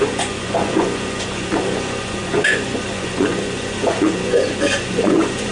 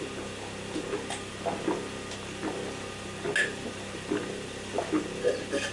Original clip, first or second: second